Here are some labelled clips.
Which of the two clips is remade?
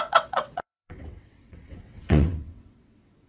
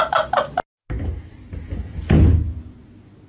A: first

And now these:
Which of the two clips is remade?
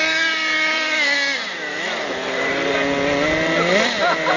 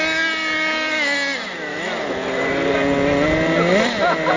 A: first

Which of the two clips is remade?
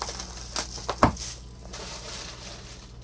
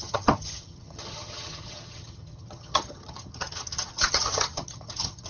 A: second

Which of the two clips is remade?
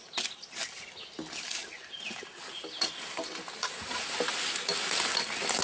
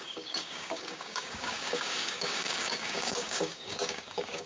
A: second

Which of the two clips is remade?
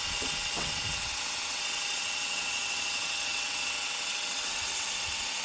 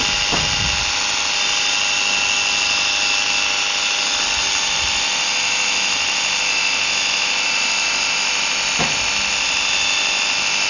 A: first